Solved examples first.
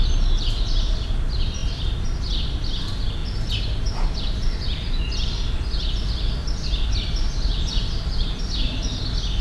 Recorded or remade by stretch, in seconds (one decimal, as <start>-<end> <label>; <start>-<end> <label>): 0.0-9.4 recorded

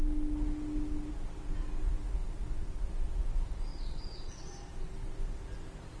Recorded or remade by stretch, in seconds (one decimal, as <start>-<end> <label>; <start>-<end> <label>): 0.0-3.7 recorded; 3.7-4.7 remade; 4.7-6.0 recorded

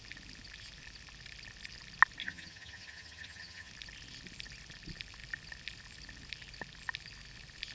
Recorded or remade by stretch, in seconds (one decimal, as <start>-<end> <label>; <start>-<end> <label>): 0.0-2.2 recorded; 2.2-3.7 remade; 3.7-7.7 recorded

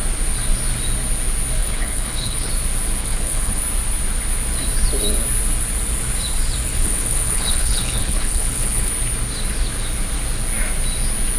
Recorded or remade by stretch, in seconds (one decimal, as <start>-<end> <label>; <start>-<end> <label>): 0.0-1.6 recorded; 1.6-2.5 remade; 2.5-3.0 recorded; 3.0-3.6 remade; 3.6-6.7 recorded; 6.7-8.9 remade; 8.9-11.4 recorded

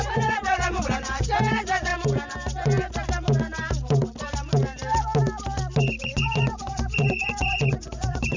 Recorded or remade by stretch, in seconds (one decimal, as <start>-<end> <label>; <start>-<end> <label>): 0.0-1.9 remade; 1.9-6.0 recorded; 6.0-8.4 remade

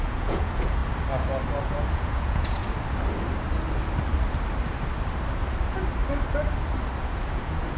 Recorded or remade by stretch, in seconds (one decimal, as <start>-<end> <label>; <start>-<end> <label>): 0.0-0.8 remade; 0.8-1.6 recorded; 1.6-2.6 remade; 2.6-7.0 recorded; 7.0-7.8 remade

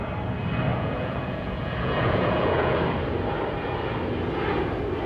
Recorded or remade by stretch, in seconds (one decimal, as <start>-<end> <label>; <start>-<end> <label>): 0.0-0.7 recorded; 0.7-2.8 remade; 2.8-5.1 recorded